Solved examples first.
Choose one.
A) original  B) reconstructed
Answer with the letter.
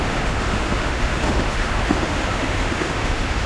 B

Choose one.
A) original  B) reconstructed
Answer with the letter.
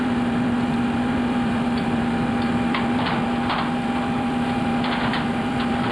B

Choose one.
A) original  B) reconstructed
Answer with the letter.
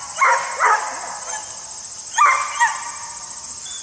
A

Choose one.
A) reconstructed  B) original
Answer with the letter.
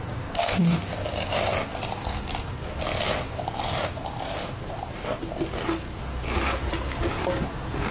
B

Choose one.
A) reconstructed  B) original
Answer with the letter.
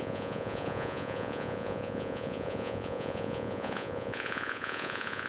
A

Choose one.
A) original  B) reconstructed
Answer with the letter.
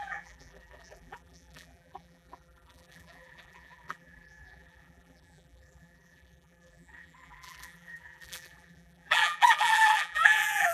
B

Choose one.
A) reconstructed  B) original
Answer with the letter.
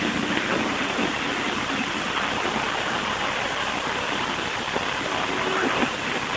B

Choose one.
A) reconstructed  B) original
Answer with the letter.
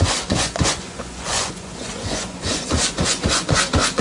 A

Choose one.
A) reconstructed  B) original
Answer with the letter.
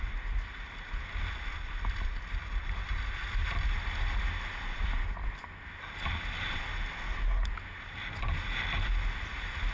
B